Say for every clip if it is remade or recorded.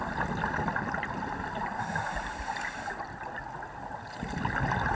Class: recorded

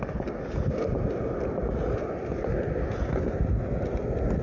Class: recorded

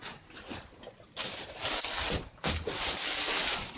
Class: recorded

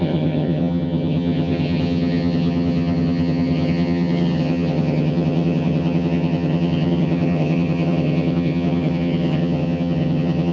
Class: remade